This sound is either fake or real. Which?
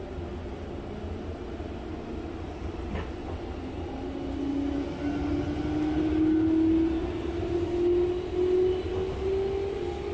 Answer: real